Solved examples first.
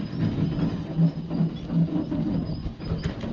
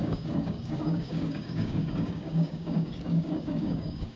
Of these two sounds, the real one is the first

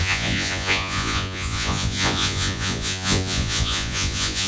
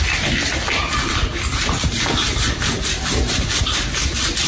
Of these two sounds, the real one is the second